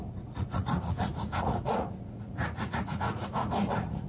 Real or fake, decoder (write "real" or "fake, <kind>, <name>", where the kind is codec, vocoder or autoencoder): fake, vocoder, Vocos